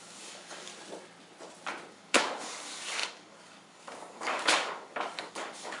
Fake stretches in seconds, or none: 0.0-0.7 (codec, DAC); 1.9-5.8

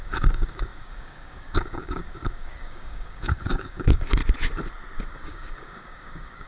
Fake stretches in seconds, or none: 0.0-4.2 (codec, DAC); 5.0-6.5

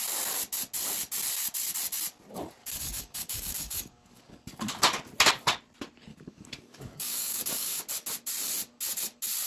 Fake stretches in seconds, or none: 2.6-4.7 (codec, DAC); 6.1-7.8

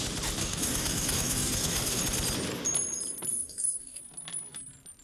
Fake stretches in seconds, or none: 0.4-2.0 (codec, DAC); 3.3-4.0

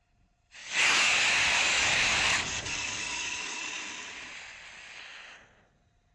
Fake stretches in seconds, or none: 0.6-3.6 (codec, DAC)

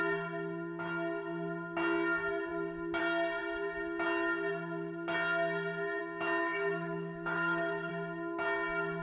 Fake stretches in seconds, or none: 6.4-7.9 (codec, DAC)

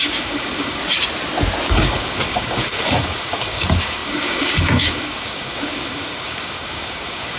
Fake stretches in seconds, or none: 0.0-0.8 (codec, DAC); 1.7-7.4

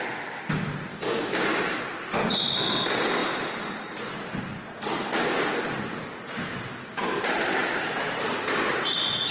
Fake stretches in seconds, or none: 0.9-1.8 (codec, DAC)